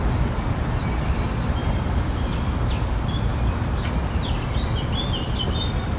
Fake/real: real